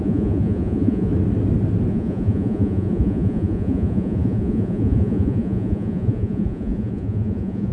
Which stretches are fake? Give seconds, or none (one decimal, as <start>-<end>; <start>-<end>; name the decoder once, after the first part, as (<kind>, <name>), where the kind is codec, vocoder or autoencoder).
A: 0.0-1.1 (vocoder, Vocos); 1.9-7.7